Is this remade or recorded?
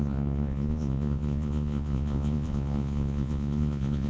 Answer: remade